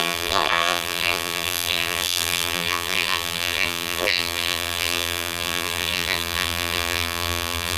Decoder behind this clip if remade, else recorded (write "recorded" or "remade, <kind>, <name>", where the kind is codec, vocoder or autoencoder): remade, vocoder, BigVGAN v2